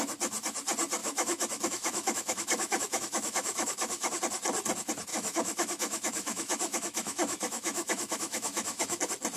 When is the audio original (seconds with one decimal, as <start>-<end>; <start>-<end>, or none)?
0.0-1.0; 4.2-5.1; 9.0-9.4